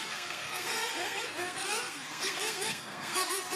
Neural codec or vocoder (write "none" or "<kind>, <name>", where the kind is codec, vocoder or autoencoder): codec, SNAC